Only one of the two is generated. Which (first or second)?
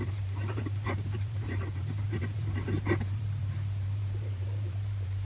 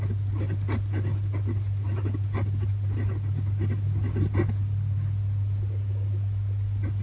first